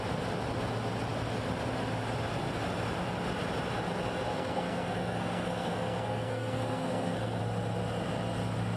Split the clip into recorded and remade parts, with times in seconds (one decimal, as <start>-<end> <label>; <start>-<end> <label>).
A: 0.0-4.3 recorded; 4.3-7.4 remade; 7.4-8.8 recorded